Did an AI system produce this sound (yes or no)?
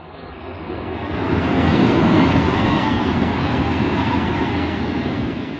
yes